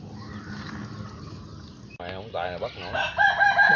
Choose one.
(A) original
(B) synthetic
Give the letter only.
A